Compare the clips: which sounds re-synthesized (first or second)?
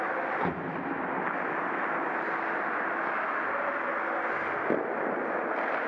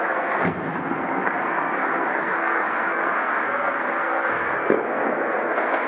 second